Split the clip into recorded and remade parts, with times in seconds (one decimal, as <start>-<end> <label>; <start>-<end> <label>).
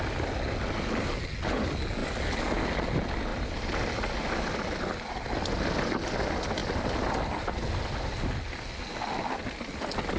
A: 0.0-3.3 recorded; 3.3-3.9 remade; 3.9-10.2 recorded